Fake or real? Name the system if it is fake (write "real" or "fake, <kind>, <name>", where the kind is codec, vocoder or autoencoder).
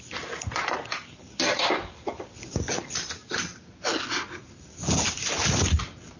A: real